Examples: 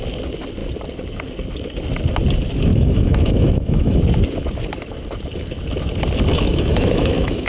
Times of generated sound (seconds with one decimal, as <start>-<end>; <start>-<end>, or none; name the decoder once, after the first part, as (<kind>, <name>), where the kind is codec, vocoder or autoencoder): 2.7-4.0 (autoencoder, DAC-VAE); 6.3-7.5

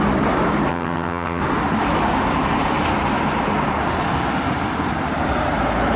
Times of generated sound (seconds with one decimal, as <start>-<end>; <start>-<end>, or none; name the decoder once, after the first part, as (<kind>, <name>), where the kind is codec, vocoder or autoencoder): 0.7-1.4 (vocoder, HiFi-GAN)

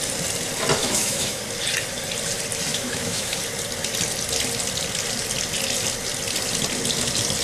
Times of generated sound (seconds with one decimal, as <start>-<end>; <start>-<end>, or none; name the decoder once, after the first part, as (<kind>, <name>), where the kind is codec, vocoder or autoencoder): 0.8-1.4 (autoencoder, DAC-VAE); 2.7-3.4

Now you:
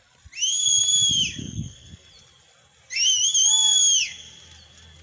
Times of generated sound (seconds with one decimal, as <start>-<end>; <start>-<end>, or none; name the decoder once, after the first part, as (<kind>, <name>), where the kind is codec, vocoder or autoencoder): 1.4-2.1 (codec, SNAC)

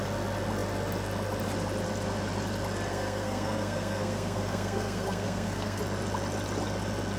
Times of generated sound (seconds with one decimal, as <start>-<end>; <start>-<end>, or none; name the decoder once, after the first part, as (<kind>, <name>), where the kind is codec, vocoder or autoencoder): 2.9-5.8 (codec, SNAC)

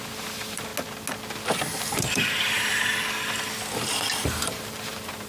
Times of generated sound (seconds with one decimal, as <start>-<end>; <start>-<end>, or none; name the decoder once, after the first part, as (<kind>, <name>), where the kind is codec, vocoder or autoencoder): 0.0-0.7 (vocoder, BigVGAN v2); 1.8-2.8; 4.2-5.3

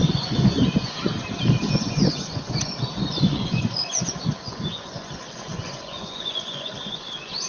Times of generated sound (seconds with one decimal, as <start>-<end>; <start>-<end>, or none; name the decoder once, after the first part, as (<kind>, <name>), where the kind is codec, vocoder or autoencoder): 0.0-1.0 (vocoder, Vocos); 1.6-7.5